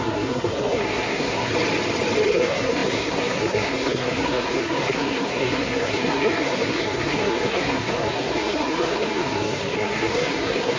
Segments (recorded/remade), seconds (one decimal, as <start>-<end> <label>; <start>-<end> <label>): 0.0-1.5 remade; 1.5-2.3 recorded; 2.3-10.8 remade